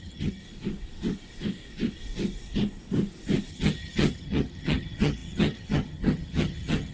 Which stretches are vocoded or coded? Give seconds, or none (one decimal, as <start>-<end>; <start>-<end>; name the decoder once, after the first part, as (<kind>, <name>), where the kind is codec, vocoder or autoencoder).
0.0-0.4 (vocoder, HiFi-GAN); 3.5-6.9